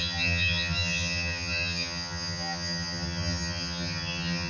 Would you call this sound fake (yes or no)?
yes